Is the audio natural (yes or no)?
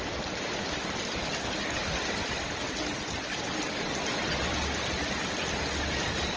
yes